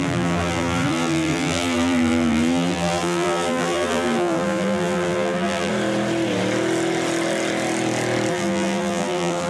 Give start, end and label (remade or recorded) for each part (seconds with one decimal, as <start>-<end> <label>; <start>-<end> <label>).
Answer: 0.0-5.7 remade; 5.7-8.3 recorded; 8.3-9.5 remade